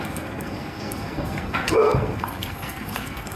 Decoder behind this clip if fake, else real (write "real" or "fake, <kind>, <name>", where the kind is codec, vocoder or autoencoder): fake, codec, SNAC